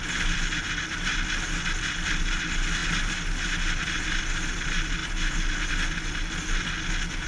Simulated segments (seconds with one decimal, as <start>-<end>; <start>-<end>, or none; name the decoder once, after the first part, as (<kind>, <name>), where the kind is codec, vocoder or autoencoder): none